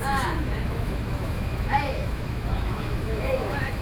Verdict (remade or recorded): remade